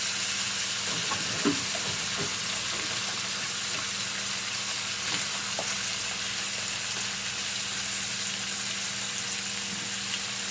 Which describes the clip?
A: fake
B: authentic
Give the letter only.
B